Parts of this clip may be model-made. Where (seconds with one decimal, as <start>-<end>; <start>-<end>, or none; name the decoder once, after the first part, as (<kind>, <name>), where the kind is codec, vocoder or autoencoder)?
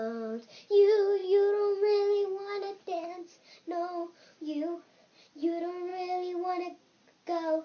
none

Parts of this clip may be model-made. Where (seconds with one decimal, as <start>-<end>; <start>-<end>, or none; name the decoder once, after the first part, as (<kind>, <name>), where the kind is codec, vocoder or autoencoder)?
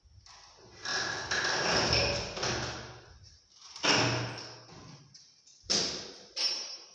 none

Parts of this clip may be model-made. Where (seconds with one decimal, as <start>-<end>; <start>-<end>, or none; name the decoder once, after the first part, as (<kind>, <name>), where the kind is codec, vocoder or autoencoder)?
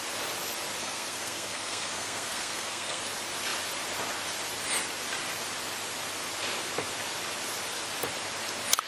0.8-3.0 (codec, SNAC)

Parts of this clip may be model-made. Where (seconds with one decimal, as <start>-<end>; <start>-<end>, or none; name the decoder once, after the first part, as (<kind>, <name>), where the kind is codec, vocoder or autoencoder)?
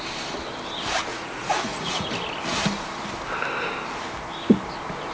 1.1-2.1 (vocoder, Vocos)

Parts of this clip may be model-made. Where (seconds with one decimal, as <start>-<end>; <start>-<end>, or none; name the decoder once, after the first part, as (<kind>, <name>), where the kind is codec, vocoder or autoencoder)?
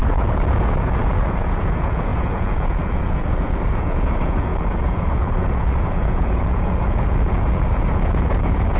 0.0-8.8 (vocoder, Vocos)